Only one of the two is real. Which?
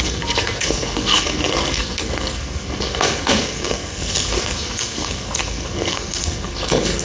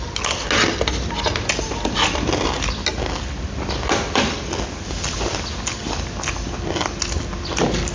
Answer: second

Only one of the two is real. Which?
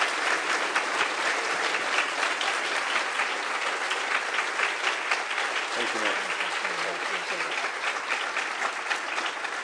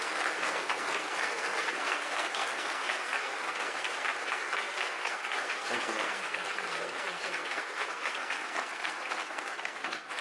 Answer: first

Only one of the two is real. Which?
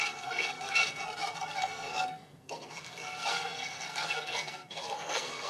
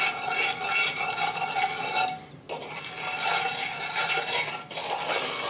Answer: second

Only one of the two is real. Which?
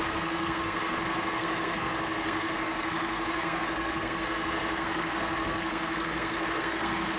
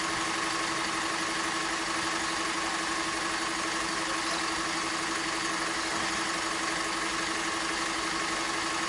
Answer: second